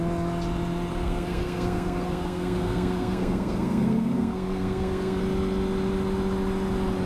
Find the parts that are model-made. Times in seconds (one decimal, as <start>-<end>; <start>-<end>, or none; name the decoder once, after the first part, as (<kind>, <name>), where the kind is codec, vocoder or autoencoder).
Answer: 0.9-5.2 (codec, SNAC)

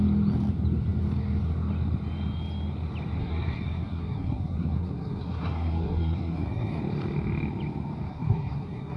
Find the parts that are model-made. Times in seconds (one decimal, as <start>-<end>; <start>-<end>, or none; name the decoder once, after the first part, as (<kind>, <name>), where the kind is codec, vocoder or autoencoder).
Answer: 3.2-6.8 (codec, SNAC); 8.1-9.0

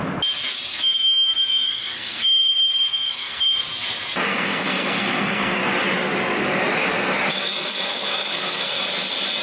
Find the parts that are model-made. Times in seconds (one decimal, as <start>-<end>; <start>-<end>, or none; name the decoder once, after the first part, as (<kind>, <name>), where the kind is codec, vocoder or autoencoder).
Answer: 0.7-2.5 (codec, SNAC); 2.9-3.6; 4.3-5.6; 7.3-8.8

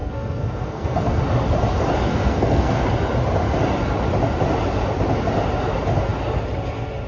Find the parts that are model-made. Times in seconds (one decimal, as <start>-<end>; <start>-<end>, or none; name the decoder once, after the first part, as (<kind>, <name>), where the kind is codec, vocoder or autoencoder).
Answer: 0.0-1.2 (codec, SNAC); 2.1-2.9